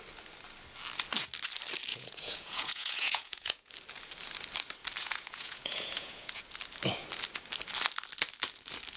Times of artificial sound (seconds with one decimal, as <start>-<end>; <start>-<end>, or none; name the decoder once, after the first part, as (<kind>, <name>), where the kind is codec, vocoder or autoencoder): 1.9-3.7 (vocoder, Vocos); 5.0-6.4